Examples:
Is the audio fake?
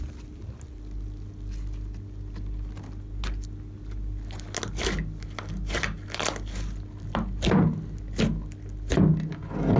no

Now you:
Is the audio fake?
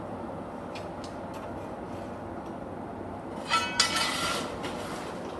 no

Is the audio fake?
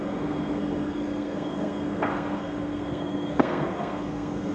yes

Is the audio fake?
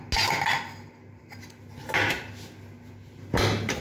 no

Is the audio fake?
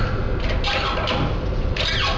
no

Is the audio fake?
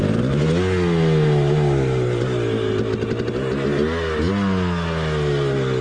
no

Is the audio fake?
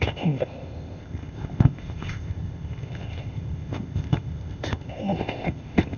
yes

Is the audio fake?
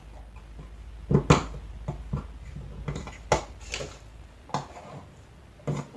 no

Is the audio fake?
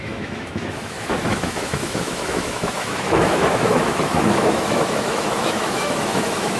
yes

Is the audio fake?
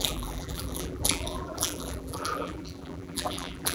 yes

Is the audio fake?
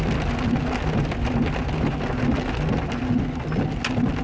no